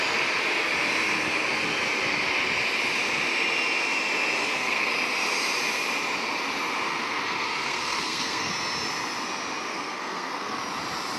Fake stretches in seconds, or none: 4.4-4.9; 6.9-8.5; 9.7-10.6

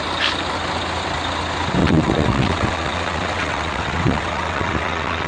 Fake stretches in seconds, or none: 1.8-5.3